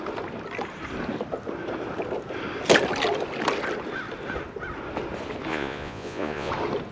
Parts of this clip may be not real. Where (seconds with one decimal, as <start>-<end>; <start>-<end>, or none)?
5.5-6.5